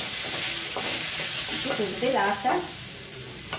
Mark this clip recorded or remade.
recorded